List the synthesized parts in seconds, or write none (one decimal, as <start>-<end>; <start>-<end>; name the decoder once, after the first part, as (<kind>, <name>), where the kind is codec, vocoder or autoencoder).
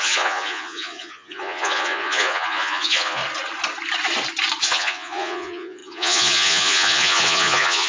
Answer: 0.0-3.2 (vocoder, Vocos); 4.6-7.9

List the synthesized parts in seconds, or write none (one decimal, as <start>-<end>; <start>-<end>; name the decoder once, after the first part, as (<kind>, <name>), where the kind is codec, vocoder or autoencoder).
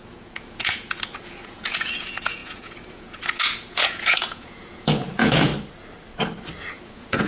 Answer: 0.0-5.5 (vocoder, Vocos); 6.6-7.3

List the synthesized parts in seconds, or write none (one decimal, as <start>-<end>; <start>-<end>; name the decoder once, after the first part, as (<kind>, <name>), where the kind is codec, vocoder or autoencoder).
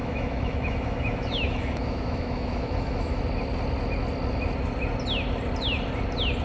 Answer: 0.0-3.2 (autoencoder, DAC-VAE)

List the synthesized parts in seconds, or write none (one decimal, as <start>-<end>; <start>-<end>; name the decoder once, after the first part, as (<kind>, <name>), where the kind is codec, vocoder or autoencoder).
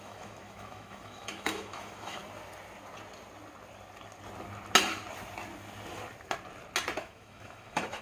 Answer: 0.0-2.2 (autoencoder, DAC-VAE); 7.0-8.0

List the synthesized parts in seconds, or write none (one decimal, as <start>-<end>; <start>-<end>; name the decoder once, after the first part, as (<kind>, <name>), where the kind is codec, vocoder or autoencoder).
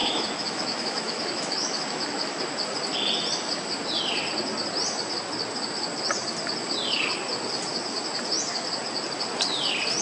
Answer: 0.0-2.4 (autoencoder, DAC-VAE)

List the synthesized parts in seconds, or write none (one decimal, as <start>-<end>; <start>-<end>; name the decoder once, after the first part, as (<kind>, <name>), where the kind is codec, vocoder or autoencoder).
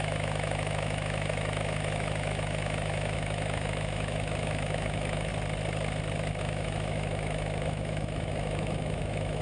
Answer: 0.0-5.3 (autoencoder, DAC-VAE); 6.4-9.4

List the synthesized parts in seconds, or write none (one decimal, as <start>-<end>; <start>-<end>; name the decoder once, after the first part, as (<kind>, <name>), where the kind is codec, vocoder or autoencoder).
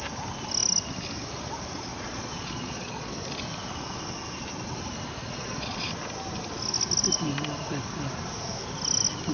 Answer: 1.9-3.1 (vocoder, Vocos); 5.2-5.9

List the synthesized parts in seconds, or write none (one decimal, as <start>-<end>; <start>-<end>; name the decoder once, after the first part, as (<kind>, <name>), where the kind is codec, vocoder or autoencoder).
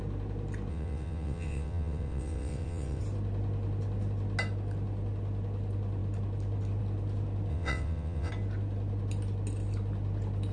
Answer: 0.7-3.0 (vocoder, WaveNeXt); 7.5-8.3